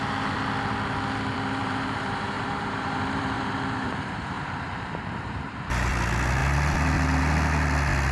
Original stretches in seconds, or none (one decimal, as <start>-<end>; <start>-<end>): 0.0-1.6; 5.9-8.1